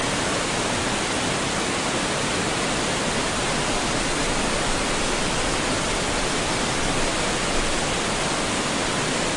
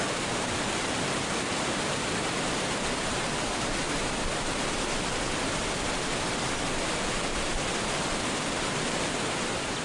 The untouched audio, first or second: first